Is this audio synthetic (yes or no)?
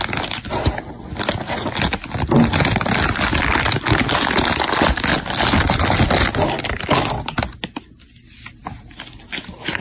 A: no